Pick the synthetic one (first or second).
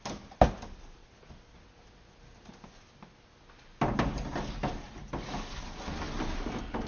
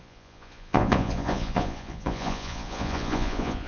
second